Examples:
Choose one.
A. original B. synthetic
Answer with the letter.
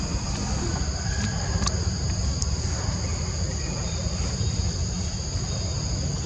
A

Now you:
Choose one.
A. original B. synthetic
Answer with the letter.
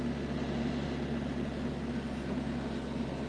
A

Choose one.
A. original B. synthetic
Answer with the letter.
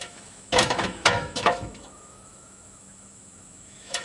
B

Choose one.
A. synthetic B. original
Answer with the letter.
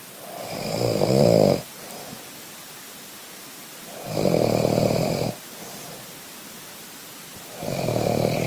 B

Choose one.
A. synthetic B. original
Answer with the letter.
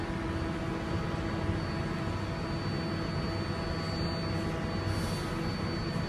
B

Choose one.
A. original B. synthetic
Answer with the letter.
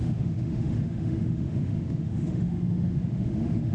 B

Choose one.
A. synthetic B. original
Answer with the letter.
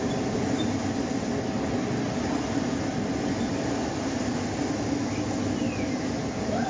B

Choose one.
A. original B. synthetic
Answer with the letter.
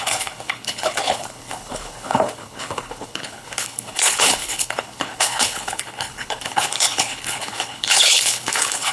B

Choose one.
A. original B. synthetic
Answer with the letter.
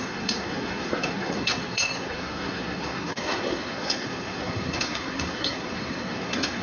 B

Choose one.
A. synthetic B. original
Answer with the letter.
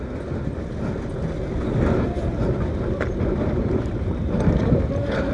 B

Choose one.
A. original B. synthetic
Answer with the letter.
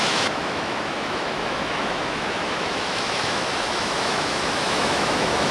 B